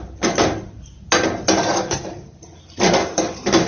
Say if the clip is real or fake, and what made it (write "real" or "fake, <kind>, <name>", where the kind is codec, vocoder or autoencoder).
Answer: real